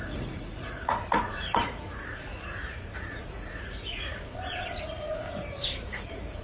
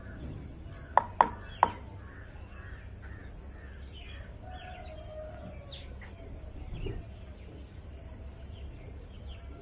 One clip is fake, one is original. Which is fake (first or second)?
first